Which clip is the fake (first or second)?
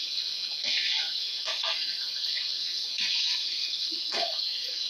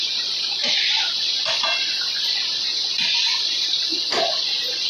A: first